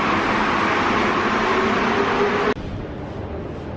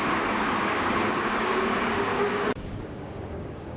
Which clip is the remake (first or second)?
second